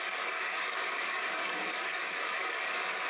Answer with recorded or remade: remade